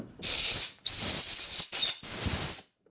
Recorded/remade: recorded